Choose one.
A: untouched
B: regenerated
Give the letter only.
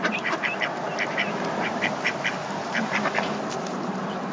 B